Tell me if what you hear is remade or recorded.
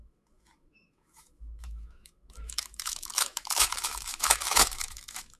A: remade